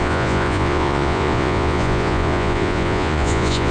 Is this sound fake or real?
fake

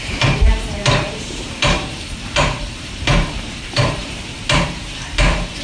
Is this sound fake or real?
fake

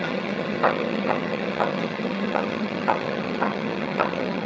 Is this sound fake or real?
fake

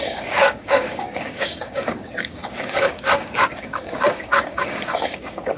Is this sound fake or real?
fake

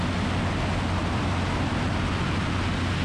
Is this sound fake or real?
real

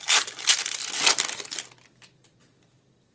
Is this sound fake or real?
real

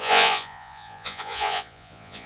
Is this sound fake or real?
fake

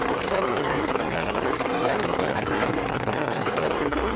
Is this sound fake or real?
fake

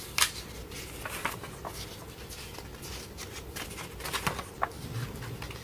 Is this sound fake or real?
real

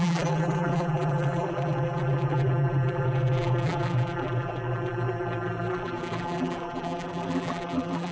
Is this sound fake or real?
fake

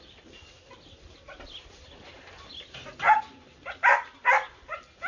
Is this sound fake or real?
real